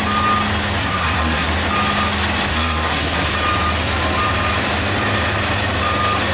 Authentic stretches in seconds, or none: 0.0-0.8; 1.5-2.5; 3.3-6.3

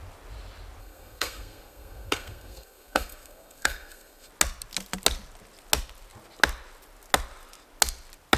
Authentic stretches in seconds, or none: 0.0-0.8; 4.3-8.4

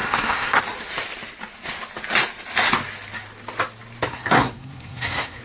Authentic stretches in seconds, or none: 0.6-4.1

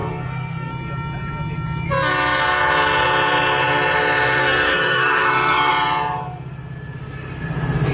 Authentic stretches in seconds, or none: 0.7-4.4; 5.7-7.9